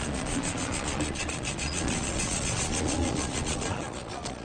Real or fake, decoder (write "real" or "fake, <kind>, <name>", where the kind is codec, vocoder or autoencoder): fake, vocoder, Vocos